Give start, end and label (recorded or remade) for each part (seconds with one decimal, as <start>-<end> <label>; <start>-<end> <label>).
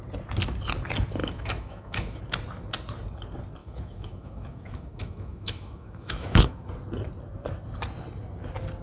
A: 0.0-1.2 recorded; 1.2-2.2 remade; 2.2-3.6 recorded; 3.6-6.7 remade; 6.7-8.8 recorded